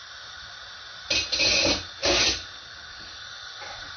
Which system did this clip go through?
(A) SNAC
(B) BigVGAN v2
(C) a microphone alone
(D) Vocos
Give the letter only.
C